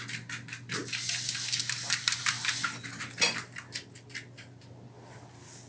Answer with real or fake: real